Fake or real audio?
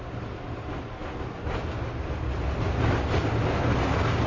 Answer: real